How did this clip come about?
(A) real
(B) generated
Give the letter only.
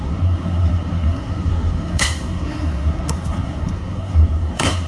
B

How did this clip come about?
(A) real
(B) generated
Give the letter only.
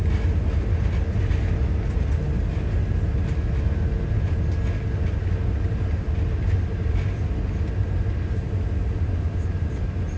A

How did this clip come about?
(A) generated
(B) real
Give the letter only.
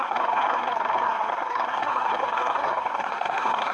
A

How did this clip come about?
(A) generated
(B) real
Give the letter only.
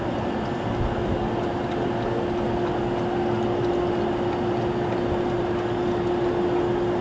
B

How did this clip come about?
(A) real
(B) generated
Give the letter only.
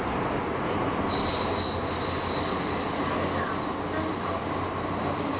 A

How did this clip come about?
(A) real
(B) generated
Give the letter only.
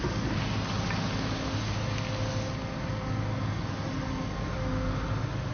A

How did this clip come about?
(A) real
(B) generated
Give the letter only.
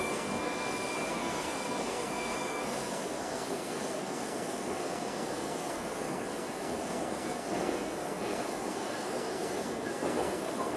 B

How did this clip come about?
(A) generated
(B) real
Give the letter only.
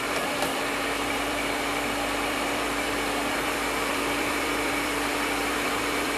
A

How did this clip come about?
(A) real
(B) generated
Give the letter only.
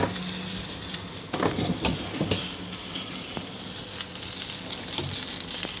A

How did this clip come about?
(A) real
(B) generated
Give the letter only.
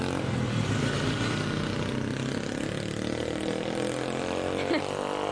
A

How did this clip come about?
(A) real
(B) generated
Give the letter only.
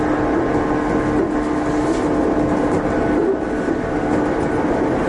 A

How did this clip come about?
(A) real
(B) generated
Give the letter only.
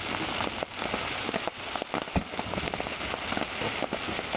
A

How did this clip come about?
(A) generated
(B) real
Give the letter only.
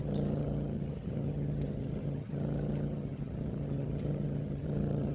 A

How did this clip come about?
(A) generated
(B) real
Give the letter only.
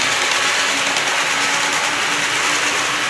B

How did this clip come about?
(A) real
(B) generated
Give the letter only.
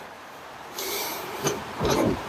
B